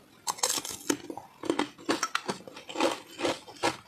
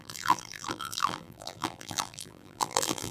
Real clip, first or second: first